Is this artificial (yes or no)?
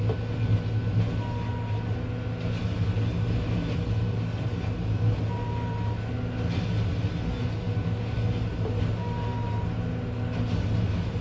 no